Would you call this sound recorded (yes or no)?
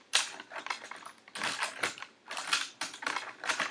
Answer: yes